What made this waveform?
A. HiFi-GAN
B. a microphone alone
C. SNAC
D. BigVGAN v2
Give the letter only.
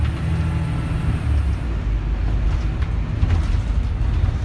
B